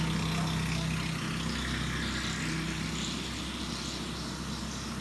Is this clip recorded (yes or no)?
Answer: yes